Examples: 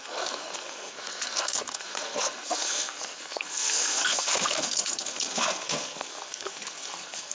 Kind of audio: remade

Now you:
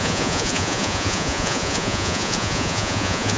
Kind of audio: remade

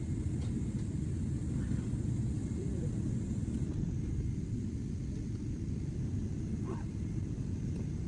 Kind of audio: recorded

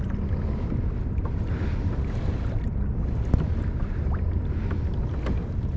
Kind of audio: recorded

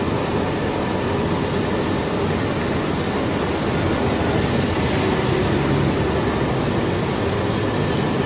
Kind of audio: recorded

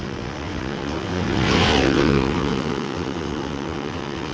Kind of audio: remade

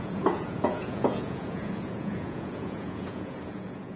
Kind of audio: remade